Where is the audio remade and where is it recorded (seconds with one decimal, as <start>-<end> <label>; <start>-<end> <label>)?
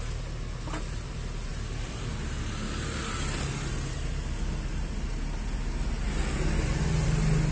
0.0-7.5 recorded